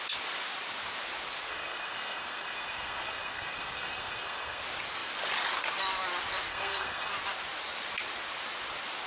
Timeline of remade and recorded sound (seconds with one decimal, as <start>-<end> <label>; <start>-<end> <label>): 0.0-1.5 recorded; 1.5-4.6 remade; 4.6-6.5 recorded; 6.5-7.1 remade; 7.1-9.1 recorded